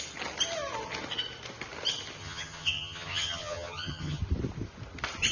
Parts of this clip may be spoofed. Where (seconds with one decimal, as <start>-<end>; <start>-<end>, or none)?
2.2-4.2